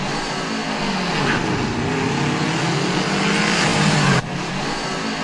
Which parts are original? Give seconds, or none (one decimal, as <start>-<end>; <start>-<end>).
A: 0.0-3.7; 4.5-5.2